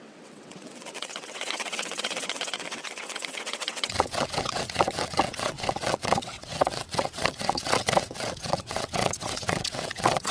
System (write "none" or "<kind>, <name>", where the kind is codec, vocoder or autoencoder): vocoder, WaveNeXt